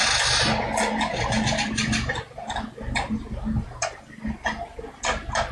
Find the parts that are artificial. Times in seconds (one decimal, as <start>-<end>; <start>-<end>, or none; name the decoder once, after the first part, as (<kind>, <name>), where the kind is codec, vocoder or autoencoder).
none